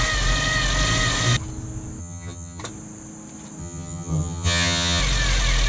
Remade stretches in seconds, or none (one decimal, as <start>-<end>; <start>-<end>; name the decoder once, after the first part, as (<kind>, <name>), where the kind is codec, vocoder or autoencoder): 2.0-2.6 (vocoder, HiFi-GAN); 3.6-5.0